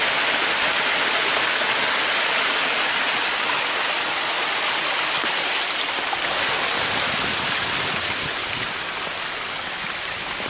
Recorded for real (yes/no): yes